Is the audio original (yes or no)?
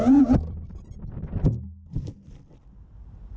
yes